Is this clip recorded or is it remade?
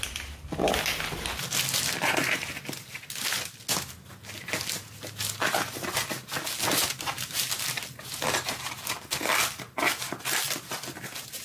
recorded